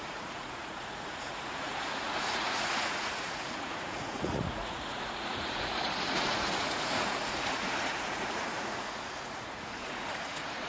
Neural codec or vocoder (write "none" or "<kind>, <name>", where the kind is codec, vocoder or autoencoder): vocoder, Vocos